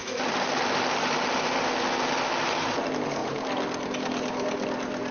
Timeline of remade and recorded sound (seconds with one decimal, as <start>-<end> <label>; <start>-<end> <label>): 0.0-5.1 recorded